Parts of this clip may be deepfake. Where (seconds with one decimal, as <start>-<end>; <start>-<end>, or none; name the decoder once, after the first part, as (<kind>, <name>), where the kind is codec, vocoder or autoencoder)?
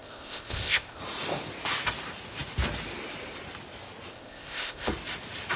0.0-1.0 (codec, ZipCodec); 4.1-4.9